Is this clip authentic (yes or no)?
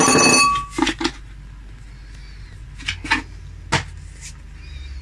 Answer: yes